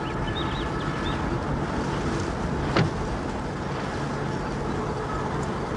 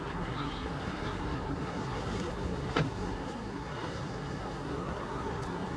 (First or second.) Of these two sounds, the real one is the first